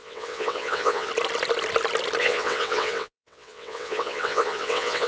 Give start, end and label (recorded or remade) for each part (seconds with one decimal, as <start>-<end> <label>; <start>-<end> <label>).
0.0-1.1 remade; 1.1-2.2 recorded; 2.2-5.1 remade